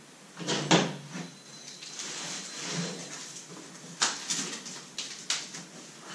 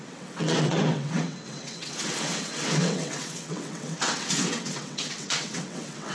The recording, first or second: first